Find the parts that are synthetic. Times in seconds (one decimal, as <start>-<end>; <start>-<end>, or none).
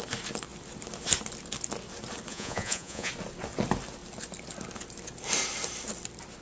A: 2.3-3.1